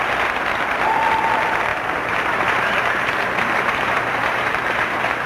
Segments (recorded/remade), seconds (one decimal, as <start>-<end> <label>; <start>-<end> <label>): 0.0-1.7 recorded; 1.7-5.3 remade